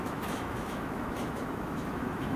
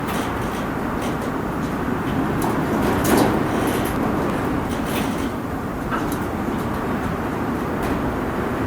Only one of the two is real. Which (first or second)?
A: second